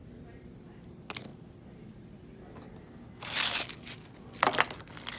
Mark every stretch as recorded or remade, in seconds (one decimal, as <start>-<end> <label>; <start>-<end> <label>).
0.0-5.2 recorded